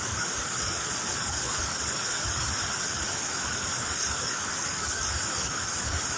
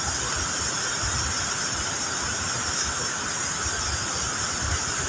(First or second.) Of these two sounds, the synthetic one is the first